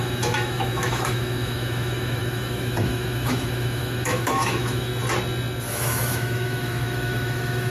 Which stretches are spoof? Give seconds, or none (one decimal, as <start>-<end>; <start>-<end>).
0.0-4.9; 5.7-7.7